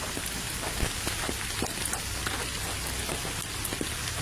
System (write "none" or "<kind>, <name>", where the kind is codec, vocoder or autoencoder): none